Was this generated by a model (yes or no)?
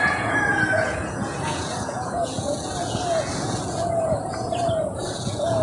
yes